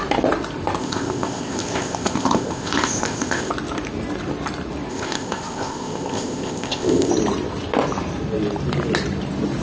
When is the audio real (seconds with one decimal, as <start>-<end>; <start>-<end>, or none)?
0.0-0.8; 3.5-4.9; 7.1-9.6